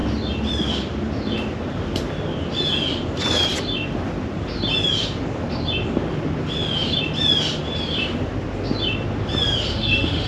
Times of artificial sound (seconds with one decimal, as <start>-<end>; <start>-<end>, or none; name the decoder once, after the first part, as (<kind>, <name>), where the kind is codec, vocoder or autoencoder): 9.7-10.3 (autoencoder, DAC-VAE)